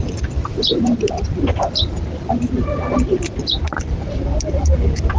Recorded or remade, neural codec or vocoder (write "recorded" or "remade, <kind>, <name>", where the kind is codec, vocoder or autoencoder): recorded